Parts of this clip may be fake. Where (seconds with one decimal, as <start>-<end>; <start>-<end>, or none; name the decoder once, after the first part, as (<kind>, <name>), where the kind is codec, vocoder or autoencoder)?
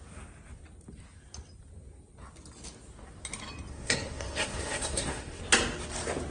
3.7-5.4 (codec, SNAC)